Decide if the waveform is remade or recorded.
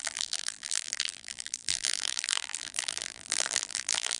remade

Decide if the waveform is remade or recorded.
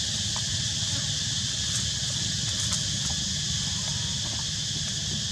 recorded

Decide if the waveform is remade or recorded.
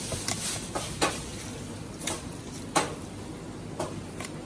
remade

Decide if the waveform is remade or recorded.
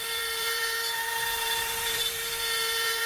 remade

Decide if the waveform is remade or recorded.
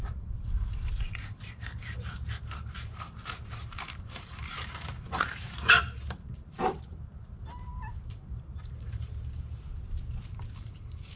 remade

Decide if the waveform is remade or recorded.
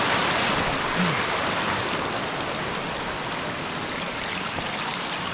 recorded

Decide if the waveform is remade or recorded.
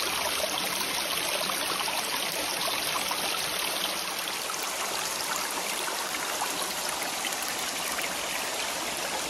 recorded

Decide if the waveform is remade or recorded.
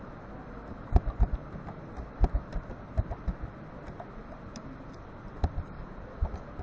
recorded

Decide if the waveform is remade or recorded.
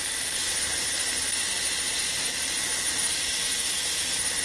remade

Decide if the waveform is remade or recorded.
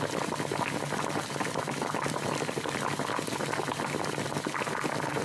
recorded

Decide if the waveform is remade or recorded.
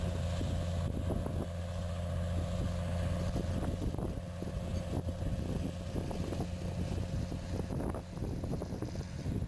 recorded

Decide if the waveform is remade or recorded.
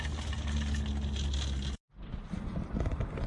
recorded